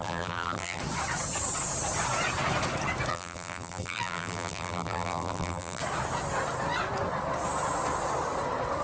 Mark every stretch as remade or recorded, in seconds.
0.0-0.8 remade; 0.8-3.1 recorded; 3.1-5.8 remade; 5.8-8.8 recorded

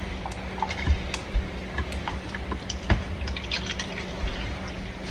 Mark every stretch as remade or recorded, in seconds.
0.0-1.2 recorded; 1.2-4.3 remade; 4.3-5.1 recorded

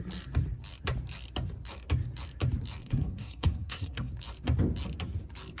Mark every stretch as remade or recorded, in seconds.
0.0-2.8 recorded; 2.8-4.1 remade; 4.1-5.6 recorded

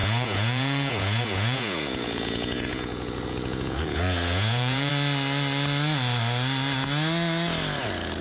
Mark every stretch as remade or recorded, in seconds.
0.0-4.9 remade; 4.9-8.2 recorded

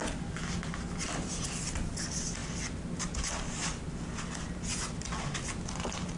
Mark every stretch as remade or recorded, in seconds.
0.0-6.2 recorded

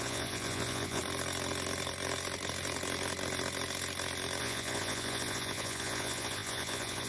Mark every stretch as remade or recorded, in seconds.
0.0-1.0 remade; 1.0-4.4 recorded; 4.4-7.1 remade